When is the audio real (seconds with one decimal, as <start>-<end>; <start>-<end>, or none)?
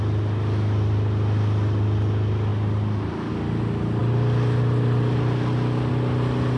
0.0-6.6